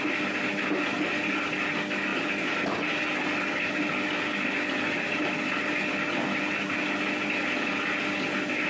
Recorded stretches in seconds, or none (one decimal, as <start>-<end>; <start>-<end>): 0.0-2.1; 3.1-8.7